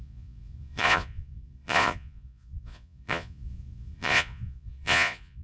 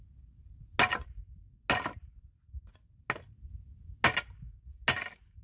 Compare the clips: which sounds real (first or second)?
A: second